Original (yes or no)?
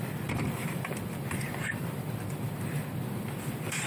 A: no